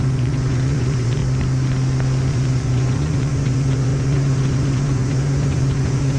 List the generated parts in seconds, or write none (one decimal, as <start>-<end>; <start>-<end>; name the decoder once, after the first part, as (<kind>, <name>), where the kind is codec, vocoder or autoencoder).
0.0-1.2 (vocoder, Vocos); 2.3-6.2